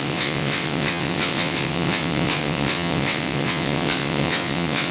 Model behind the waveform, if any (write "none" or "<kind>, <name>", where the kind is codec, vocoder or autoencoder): vocoder, WaveNeXt